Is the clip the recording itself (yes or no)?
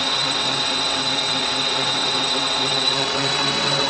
no